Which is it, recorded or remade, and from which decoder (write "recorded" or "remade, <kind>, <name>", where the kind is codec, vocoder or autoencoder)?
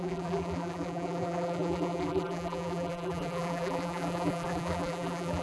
remade, vocoder, BigVGAN v2